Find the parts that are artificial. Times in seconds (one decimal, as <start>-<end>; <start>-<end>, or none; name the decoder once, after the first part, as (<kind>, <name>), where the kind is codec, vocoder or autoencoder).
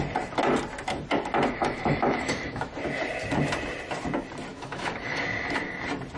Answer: 1.6-2.7 (autoencoder, DAC-VAE); 4.5-5.2